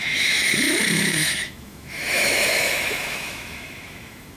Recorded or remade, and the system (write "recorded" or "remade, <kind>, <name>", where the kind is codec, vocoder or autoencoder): remade, autoencoder, DAC-VAE